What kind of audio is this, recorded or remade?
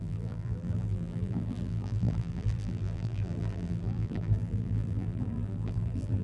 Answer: remade